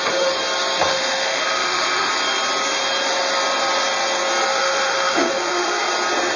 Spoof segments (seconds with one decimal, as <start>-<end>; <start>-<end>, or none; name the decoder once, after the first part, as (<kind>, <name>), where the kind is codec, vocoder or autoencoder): 0.9-2.1 (autoencoder, DAC-VAE); 4.5-5.9